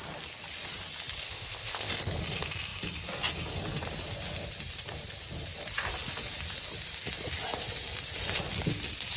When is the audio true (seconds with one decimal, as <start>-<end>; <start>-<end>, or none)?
0.0-1.2; 1.9-9.2